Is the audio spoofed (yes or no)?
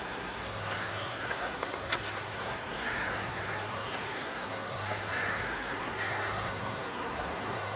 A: yes